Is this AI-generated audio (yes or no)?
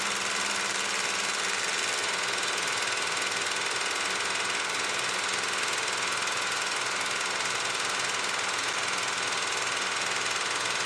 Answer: no